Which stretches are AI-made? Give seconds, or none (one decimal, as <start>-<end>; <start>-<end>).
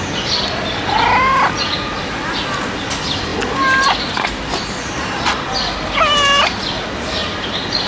none